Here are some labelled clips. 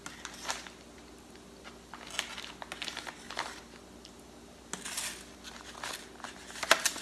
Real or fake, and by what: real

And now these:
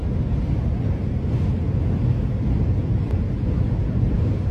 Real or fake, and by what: real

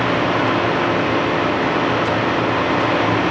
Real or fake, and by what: real